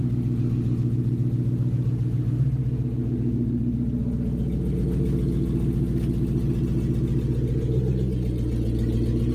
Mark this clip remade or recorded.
recorded